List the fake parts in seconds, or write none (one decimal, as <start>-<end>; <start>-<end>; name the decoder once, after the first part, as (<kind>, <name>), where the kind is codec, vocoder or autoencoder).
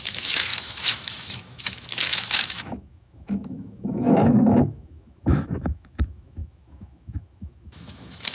0.0-8.3 (autoencoder, DAC-VAE)